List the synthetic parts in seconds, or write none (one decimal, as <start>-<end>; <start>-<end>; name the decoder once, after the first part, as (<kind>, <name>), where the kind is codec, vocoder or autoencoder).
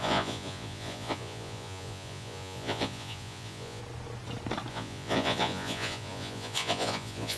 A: 0.0-3.8 (vocoder, Vocos); 4.7-7.4